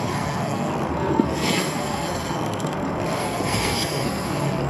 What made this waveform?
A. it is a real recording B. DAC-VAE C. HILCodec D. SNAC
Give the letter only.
D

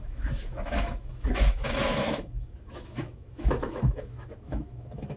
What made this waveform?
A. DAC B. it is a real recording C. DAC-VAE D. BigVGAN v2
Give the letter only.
C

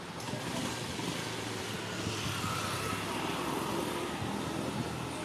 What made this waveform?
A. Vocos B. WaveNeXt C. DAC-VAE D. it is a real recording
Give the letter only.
D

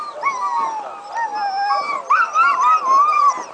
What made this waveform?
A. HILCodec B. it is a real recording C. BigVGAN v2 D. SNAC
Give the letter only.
B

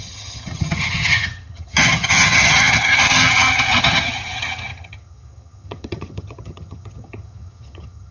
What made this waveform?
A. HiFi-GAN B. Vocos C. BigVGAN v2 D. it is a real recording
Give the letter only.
A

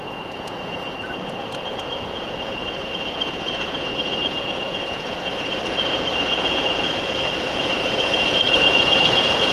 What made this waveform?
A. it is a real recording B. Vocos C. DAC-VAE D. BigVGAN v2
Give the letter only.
B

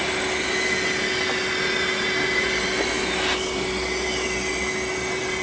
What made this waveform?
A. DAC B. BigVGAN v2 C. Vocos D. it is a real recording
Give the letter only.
D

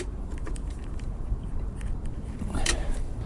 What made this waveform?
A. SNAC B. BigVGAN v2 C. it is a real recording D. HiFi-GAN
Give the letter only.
B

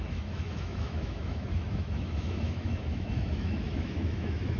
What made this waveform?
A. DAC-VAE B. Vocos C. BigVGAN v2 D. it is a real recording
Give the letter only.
A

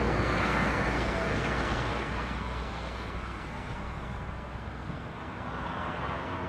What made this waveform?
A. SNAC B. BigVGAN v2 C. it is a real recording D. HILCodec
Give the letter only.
A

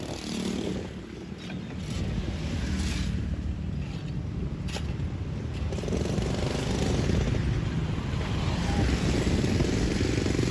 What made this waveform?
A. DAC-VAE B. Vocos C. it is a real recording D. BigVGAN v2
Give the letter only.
C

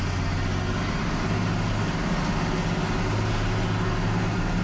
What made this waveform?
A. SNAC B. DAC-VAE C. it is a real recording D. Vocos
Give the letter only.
C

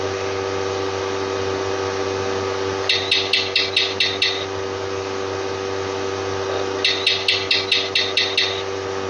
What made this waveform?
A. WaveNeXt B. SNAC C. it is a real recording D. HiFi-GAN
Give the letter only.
C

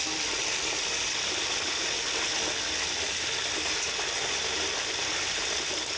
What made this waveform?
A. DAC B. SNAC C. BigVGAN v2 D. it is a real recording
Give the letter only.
D